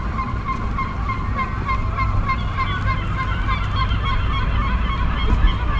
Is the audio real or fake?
real